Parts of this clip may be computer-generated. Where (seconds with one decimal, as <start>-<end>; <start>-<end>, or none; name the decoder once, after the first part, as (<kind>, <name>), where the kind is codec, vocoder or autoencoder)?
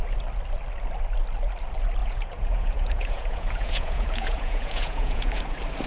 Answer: 2.0-5.4 (vocoder, Vocos)